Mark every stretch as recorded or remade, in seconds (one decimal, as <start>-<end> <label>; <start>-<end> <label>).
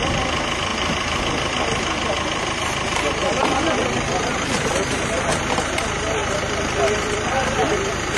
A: 0.0-0.7 recorded; 0.7-5.3 remade; 5.3-6.2 recorded; 6.2-8.2 remade